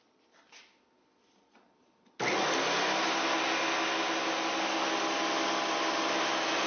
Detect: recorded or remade recorded